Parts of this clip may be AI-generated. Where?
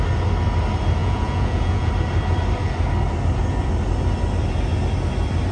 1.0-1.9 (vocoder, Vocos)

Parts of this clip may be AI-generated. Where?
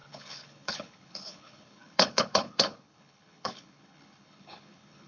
0.0-5.1 (codec, HILCodec)